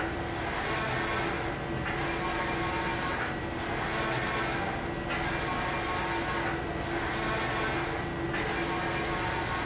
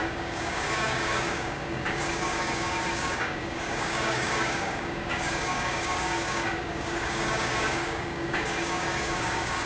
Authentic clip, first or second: first